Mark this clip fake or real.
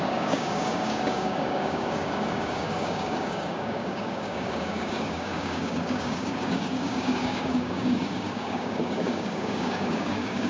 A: fake